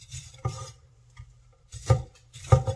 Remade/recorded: remade